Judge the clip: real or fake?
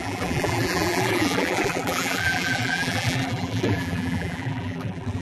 fake